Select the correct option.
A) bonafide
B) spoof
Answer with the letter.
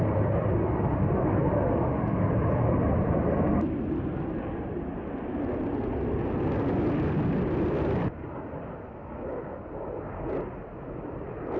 A